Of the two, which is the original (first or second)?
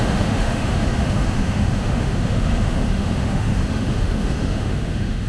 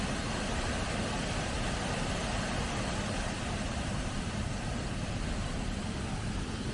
second